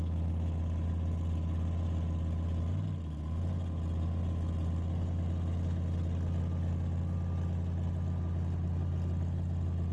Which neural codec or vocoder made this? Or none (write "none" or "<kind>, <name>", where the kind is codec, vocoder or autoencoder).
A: none